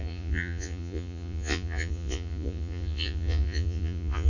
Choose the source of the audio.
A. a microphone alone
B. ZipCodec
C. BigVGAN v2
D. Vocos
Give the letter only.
D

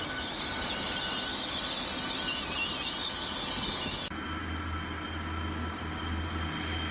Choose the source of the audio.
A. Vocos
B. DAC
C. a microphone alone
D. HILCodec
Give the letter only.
C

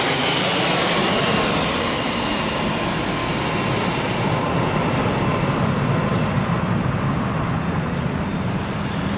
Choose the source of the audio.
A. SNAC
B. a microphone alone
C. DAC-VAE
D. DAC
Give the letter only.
B